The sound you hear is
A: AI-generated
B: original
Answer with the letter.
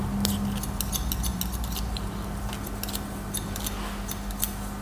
B